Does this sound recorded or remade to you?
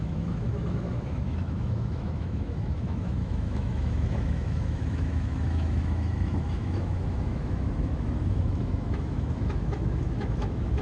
remade